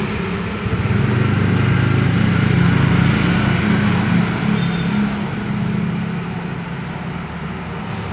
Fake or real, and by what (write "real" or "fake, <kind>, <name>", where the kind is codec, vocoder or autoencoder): real